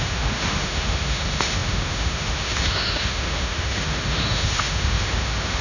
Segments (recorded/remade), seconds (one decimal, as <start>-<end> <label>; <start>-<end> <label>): 0.0-5.6 remade